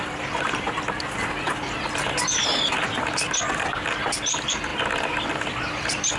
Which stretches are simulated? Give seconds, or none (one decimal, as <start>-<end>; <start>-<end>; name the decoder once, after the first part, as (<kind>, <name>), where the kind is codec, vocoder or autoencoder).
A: none